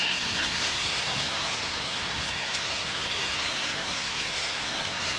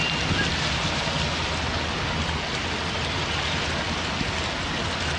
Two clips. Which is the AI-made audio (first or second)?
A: first